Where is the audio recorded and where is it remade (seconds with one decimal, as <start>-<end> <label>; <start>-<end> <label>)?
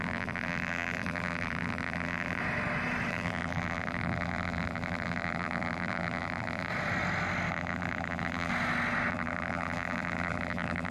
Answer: 0.0-2.4 remade; 2.4-3.1 recorded; 3.1-6.7 remade; 6.7-7.5 recorded; 7.5-8.5 remade; 8.5-9.1 recorded; 9.1-10.9 remade